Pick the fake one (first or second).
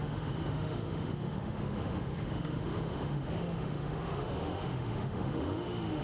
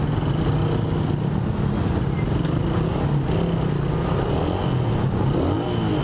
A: first